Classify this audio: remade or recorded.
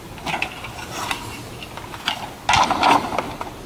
recorded